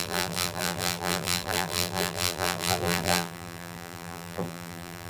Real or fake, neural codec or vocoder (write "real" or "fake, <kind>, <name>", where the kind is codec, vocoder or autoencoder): fake, vocoder, BigVGAN v2